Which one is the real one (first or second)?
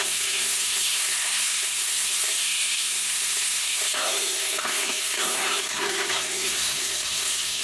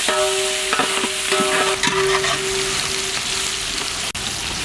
second